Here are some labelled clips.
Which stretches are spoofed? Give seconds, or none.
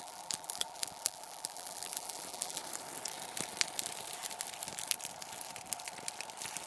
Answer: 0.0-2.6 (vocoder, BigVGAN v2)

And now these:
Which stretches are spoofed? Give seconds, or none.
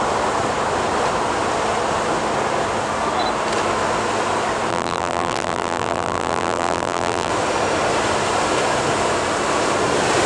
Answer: 4.7-7.3 (vocoder, BigVGAN v2)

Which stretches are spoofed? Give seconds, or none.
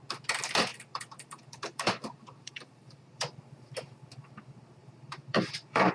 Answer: 0.7-3.4 (vocoder, BigVGAN v2); 4.8-5.9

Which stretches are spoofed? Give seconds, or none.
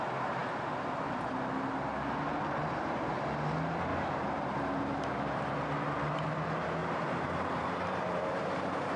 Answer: 3.9-5.1 (vocoder, BigVGAN v2); 6.8-9.0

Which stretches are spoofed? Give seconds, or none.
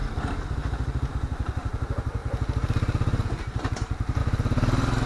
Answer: 1.1-2.2 (vocoder, BigVGAN v2); 3.7-4.2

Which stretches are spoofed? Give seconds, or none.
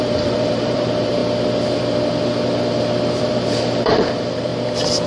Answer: 0.0-1.2 (vocoder, BigVGAN v2); 3.2-4.5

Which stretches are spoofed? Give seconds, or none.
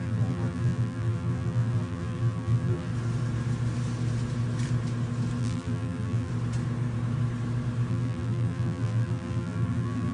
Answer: 0.0-2.9 (vocoder, BigVGAN v2); 5.4-6.3; 7.9-10.1